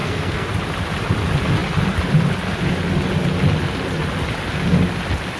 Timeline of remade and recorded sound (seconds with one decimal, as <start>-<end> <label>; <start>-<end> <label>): 0.0-0.5 remade; 0.5-5.4 recorded